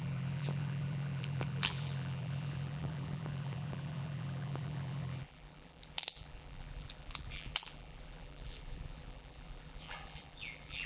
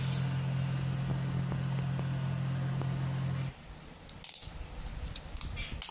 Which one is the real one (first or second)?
second